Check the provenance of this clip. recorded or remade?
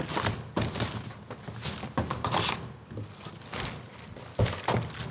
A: recorded